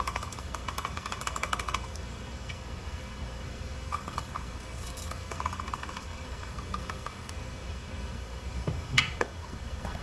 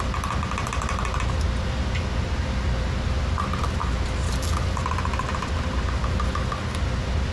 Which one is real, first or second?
second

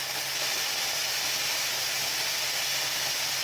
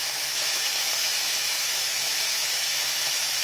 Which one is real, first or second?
first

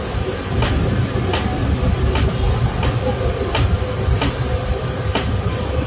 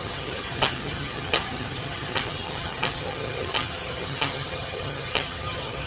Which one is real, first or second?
first